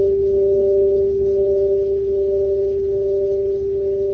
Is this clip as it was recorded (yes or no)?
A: no